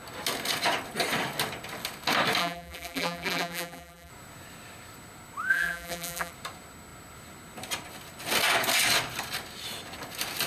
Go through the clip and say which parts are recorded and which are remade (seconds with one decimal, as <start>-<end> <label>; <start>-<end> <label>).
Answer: 0.0-2.4 recorded; 2.4-4.1 remade; 4.1-5.5 recorded; 5.5-6.3 remade; 6.3-10.5 recorded